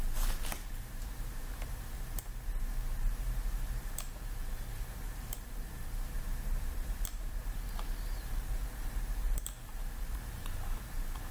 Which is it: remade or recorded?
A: remade